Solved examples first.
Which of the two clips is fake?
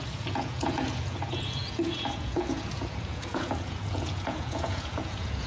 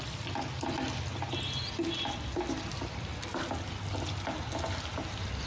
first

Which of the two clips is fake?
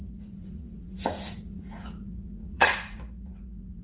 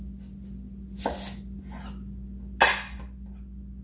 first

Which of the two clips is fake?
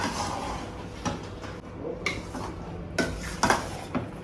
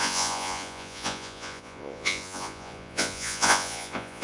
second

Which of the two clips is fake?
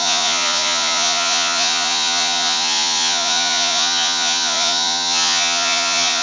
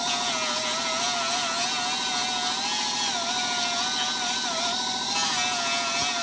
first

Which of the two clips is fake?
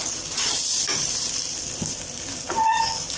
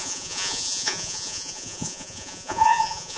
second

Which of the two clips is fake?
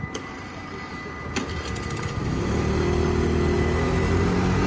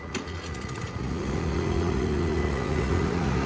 second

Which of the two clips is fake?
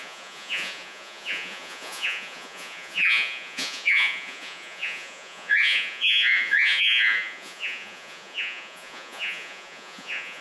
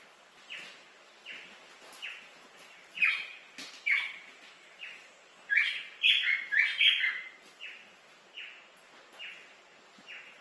first